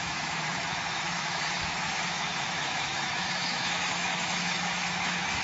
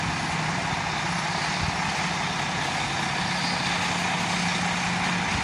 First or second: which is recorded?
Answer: second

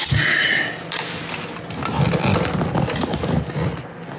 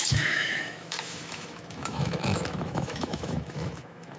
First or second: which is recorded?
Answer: first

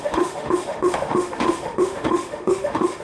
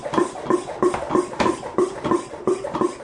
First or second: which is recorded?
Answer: second